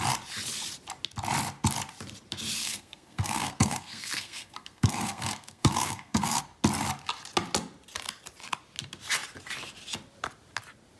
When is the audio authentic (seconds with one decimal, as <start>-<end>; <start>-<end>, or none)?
0.0-2.6; 6.4-11.0